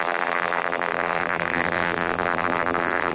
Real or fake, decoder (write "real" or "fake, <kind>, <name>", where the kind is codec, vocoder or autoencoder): fake, vocoder, BigVGAN v2